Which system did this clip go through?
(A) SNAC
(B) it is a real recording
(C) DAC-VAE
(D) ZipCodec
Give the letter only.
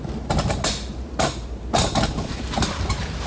B